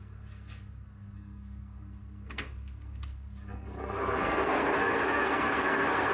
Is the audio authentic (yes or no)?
no